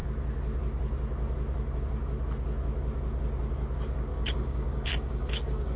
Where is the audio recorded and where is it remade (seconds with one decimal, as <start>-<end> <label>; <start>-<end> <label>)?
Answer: 0.0-4.1 recorded; 4.1-5.8 remade